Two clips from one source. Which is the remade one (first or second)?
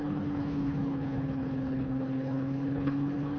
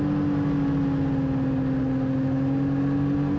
first